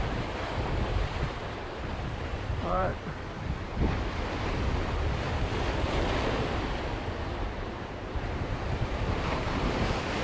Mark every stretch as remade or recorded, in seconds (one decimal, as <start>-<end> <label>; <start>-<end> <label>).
0.0-2.9 remade; 2.9-7.5 recorded; 7.5-10.2 remade